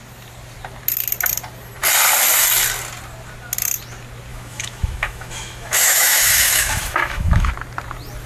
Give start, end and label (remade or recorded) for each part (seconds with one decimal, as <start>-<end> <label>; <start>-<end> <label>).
0.0-4.3 recorded; 4.3-7.5 remade; 7.5-8.3 recorded